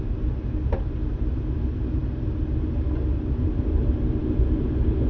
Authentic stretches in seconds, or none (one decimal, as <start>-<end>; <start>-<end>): 0.0-5.1